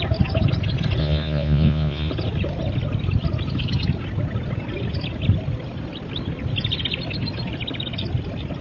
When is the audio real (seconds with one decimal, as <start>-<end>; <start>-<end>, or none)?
0.0-1.0; 2.1-8.6